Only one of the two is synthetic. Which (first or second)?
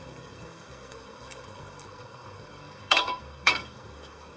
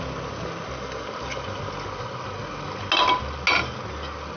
first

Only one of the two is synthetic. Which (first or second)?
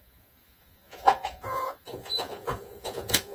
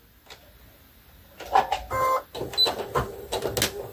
first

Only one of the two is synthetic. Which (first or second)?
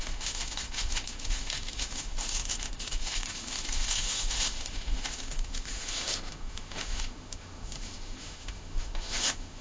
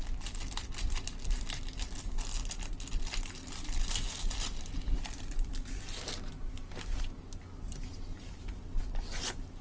first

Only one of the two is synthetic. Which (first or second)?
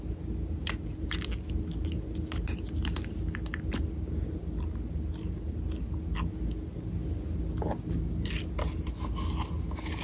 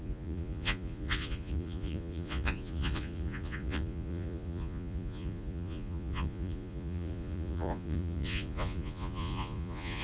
second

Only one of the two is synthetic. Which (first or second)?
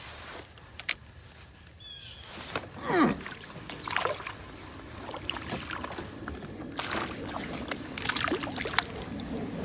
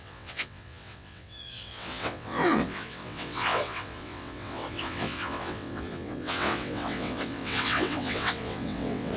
second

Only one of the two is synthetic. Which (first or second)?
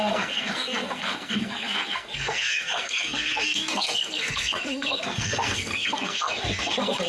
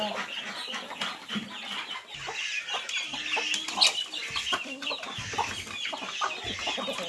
first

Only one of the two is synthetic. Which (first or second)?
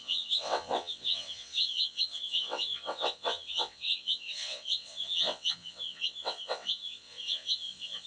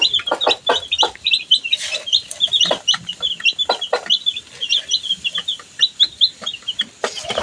first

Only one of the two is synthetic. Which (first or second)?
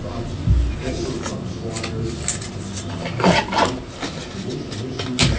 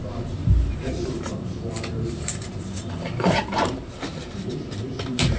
second